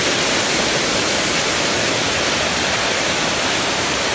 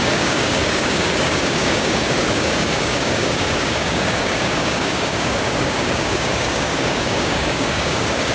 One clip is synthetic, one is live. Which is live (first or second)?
first